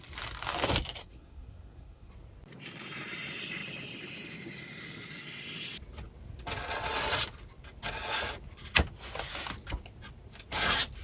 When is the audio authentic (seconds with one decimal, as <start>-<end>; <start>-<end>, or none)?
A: 0.0-1.0; 2.1-11.0